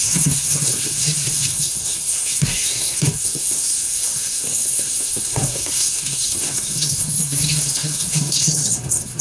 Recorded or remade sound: remade